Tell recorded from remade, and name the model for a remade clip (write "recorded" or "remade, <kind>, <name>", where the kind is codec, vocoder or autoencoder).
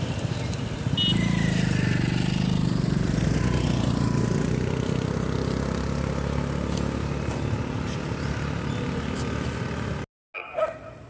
recorded